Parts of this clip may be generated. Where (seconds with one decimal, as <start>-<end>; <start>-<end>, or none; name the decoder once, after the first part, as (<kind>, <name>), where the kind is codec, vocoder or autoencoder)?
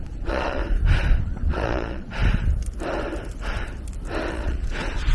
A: 0.0-0.6 (vocoder, Vocos); 1.2-2.2; 4.3-5.1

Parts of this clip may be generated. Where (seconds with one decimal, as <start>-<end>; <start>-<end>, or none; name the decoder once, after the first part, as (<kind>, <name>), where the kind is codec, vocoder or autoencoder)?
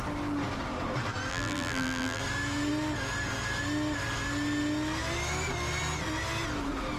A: 1.3-2.2 (vocoder, BigVGAN v2)